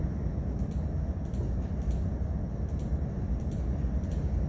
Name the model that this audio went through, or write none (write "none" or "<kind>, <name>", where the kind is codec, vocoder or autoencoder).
none